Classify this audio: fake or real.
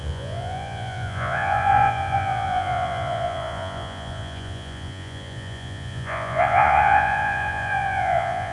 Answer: fake